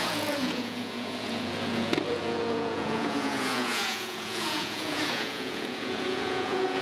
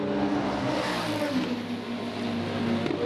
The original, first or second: second